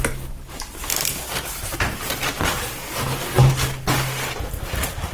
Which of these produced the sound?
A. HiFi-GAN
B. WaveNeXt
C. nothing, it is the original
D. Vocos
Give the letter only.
C